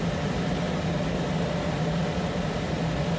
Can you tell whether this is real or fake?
real